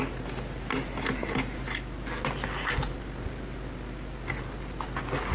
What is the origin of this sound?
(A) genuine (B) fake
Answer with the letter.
A